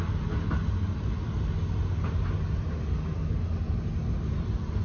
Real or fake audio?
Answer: real